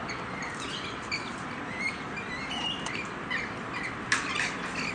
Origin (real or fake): real